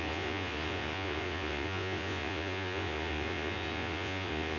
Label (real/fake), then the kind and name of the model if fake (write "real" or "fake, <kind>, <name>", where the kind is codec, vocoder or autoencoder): fake, vocoder, Vocos